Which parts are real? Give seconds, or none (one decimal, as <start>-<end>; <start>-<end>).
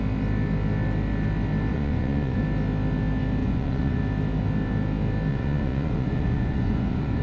0.0-1.7; 2.4-3.4; 4.0-5.3